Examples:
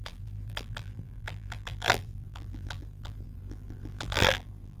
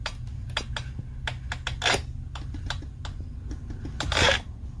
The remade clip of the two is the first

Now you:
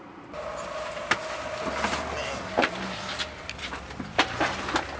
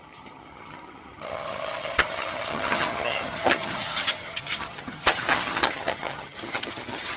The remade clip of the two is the second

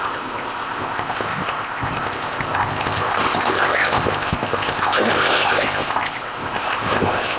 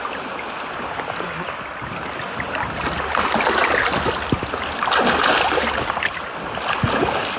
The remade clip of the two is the first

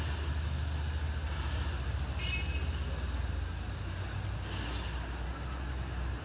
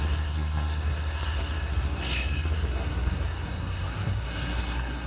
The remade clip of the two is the second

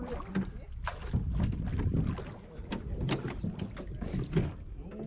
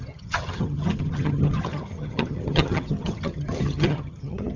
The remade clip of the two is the second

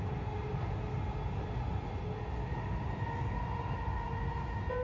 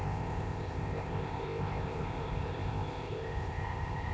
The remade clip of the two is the second